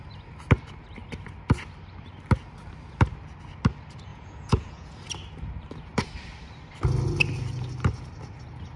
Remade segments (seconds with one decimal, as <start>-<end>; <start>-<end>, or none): 4.1-4.9